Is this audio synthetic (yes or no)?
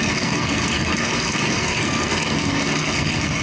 yes